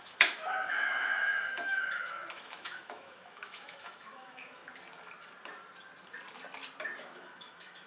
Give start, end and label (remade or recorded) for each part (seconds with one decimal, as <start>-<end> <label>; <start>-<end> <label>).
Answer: 0.0-4.6 remade; 4.6-7.0 recorded; 7.0-7.9 remade